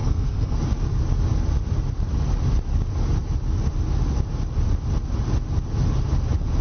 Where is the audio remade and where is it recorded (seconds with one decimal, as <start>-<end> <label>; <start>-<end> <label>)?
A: 0.0-0.6 remade; 0.6-6.6 recorded